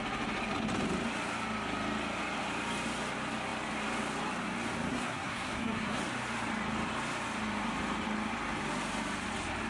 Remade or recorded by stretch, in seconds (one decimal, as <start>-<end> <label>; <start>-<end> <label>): 0.0-4.9 recorded; 4.9-6.0 remade; 6.0-9.7 recorded